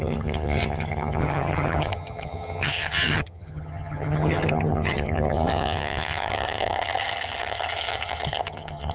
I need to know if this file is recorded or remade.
remade